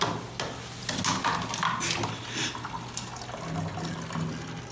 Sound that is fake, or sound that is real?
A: real